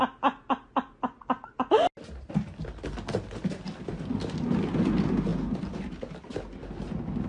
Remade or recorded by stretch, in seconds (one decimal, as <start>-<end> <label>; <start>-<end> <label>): 0.0-7.3 recorded